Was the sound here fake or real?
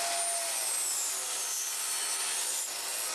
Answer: real